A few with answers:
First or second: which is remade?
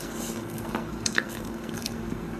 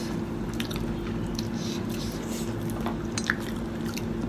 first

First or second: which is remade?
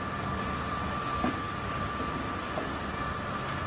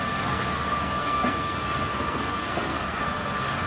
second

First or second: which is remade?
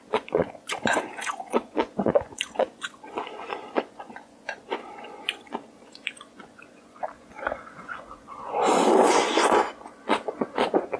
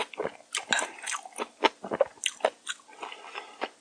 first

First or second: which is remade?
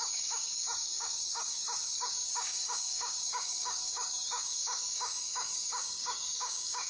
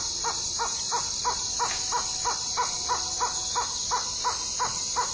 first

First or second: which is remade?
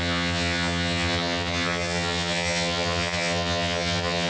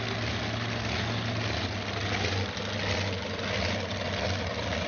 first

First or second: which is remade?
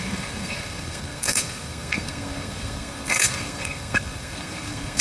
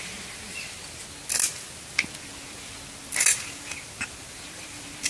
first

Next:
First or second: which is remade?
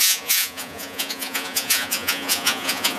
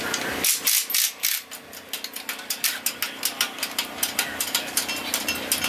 first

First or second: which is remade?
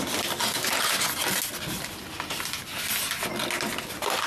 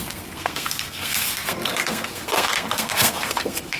second